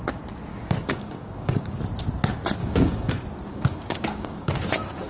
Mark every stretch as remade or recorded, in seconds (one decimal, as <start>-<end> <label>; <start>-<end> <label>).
0.0-0.5 recorded; 0.5-1.8 remade; 1.8-2.6 recorded; 2.6-3.1 remade; 3.1-3.5 recorded; 3.5-5.1 remade